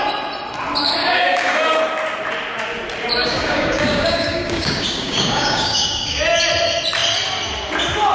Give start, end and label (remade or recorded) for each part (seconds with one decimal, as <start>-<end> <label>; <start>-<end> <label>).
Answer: 0.0-1.0 recorded; 1.0-1.8 remade; 1.8-3.2 recorded; 3.2-6.2 remade; 6.2-8.1 recorded